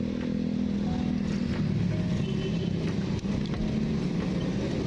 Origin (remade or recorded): recorded